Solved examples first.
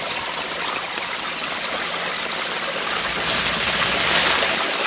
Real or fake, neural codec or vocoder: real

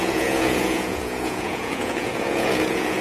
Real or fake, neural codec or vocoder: fake, vocoder, Vocos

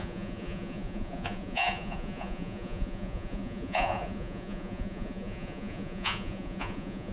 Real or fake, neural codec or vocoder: fake, vocoder, Vocos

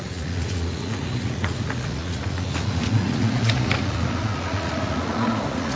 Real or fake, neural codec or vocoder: fake, vocoder, Vocos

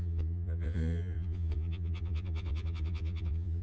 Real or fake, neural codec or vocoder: fake, vocoder, Vocos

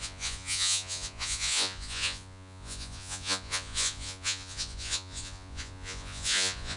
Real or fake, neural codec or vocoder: fake, vocoder, Vocos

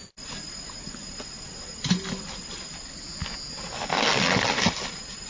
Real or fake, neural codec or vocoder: real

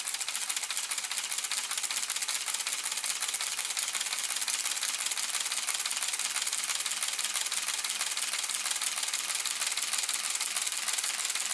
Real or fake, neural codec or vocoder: real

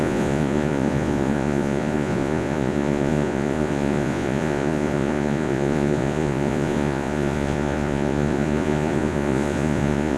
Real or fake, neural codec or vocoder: fake, vocoder, Vocos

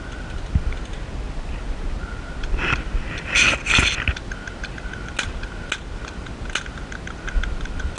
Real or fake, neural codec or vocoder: real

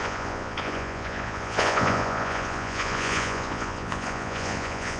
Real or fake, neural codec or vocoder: fake, vocoder, Vocos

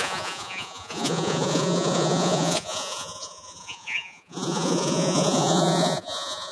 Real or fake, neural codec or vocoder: fake, vocoder, Vocos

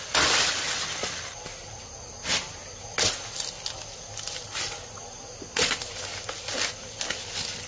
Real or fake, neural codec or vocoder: real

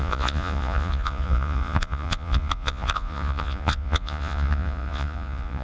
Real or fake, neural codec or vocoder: fake, vocoder, Vocos